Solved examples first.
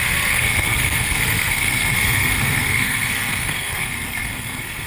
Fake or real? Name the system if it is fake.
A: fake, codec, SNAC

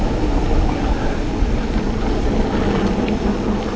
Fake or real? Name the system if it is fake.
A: real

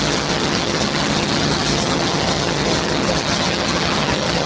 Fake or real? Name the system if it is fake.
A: fake, vocoder, HiFi-GAN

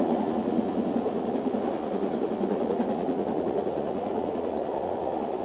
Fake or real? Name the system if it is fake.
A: fake, vocoder, Vocos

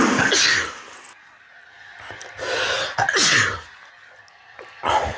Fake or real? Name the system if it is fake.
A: real